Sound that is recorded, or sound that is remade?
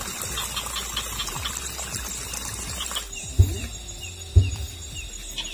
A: recorded